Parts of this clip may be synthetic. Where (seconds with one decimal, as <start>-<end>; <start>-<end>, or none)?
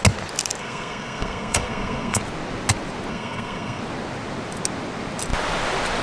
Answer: 0.6-2.2; 3.1-3.8